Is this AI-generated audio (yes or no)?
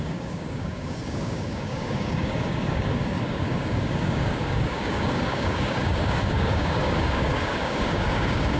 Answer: yes